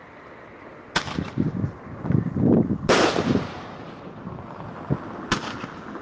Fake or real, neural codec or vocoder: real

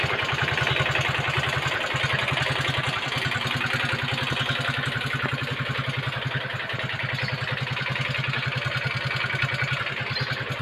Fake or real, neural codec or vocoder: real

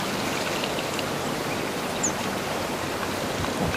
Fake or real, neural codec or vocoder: real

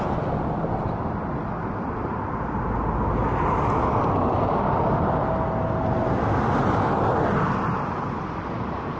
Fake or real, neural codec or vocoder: real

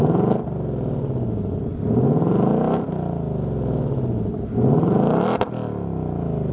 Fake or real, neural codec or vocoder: real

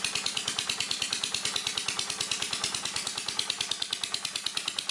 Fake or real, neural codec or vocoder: real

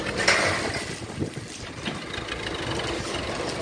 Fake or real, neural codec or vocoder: real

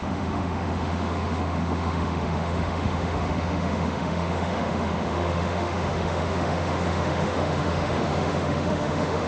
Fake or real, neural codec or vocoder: fake, autoencoder, DAC-VAE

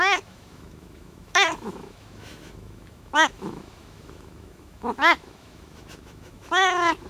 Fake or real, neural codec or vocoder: fake, autoencoder, DAC-VAE